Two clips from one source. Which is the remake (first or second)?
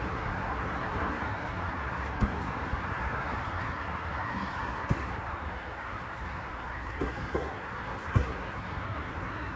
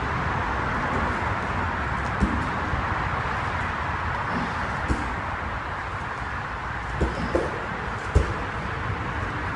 first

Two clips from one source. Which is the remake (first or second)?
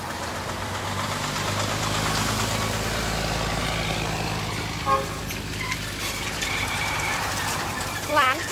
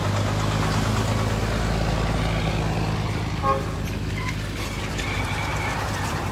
first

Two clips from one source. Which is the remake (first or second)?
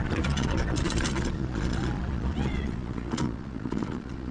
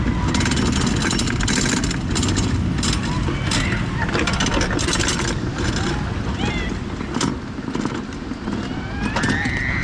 first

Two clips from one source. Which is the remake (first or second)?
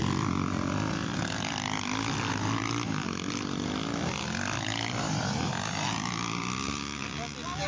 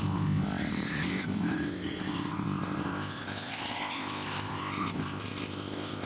second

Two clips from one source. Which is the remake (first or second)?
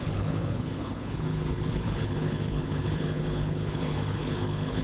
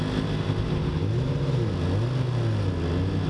first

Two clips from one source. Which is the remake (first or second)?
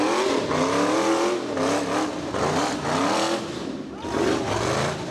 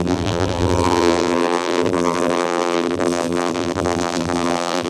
second